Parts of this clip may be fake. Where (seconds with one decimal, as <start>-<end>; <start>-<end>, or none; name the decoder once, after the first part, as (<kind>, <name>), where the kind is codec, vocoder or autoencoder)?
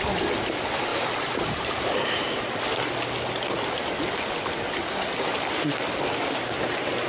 0.9-2.6 (vocoder, BigVGAN v2)